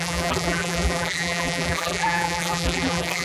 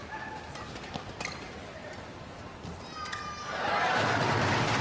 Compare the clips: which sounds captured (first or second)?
second